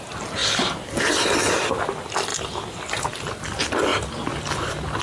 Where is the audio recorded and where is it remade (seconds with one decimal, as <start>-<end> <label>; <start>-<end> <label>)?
0.0-5.0 recorded